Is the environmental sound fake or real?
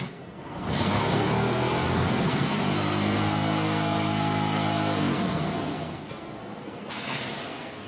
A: fake